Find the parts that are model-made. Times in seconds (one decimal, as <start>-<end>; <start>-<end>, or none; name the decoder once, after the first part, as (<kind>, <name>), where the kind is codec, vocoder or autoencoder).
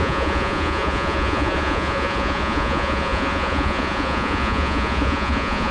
0.0-5.7 (vocoder, Vocos)